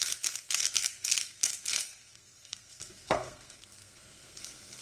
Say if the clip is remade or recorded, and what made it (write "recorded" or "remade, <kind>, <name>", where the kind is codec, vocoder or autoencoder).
remade, codec, SNAC